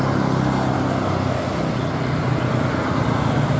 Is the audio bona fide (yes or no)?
yes